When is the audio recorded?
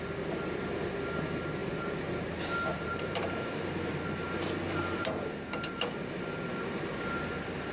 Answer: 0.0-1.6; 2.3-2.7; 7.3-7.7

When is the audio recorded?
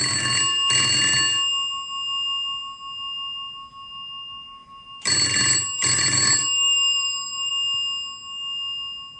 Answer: 0.0-4.6; 7.5-9.2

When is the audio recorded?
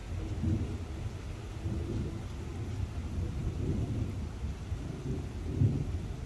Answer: 2.1-6.3